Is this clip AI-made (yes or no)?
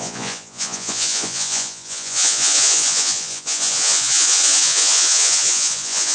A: yes